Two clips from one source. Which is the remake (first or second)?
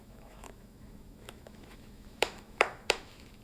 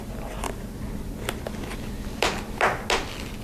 first